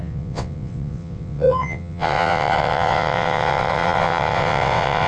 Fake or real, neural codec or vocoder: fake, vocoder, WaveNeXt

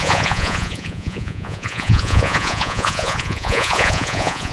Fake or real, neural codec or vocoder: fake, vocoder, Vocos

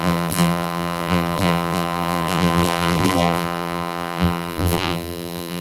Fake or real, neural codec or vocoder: fake, vocoder, BigVGAN v2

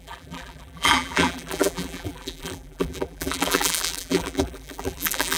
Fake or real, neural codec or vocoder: fake, vocoder, BigVGAN v2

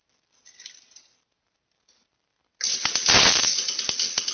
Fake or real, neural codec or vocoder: real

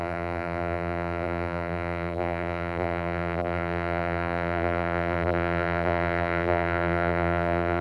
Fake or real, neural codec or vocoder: fake, vocoder, BigVGAN v2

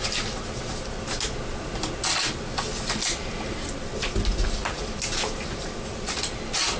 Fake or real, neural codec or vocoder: real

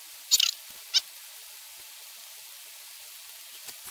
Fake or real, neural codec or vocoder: real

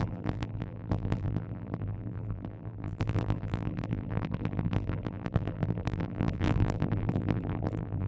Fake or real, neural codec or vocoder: fake, vocoder, BigVGAN v2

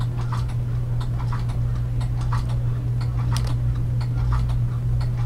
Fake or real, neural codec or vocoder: real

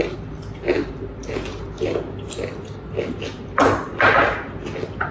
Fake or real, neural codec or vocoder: real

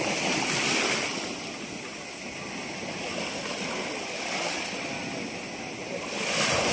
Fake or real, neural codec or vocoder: real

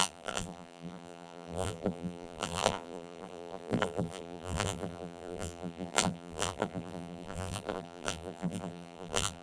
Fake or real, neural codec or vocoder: fake, vocoder, BigVGAN v2